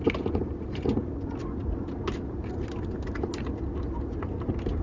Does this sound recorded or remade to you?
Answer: recorded